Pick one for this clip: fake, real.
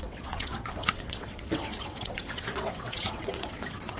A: fake